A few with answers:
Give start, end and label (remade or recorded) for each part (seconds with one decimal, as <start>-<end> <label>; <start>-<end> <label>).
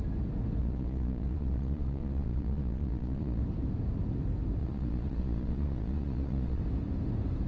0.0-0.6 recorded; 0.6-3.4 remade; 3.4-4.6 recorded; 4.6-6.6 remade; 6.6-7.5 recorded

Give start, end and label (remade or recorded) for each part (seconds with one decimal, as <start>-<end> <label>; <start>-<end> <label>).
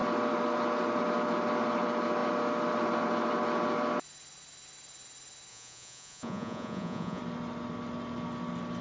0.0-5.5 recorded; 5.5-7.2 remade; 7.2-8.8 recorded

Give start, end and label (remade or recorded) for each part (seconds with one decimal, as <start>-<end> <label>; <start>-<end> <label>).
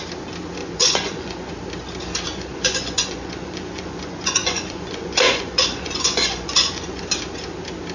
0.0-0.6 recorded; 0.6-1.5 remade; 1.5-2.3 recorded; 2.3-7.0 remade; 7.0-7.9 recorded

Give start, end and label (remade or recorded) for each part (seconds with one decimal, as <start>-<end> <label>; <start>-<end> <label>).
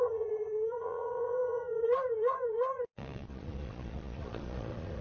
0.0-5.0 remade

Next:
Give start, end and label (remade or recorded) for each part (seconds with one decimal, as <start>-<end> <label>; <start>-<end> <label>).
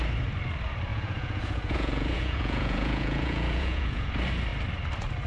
0.0-0.9 recorded; 0.9-4.1 remade; 4.1-5.3 recorded